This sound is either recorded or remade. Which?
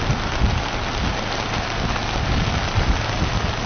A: recorded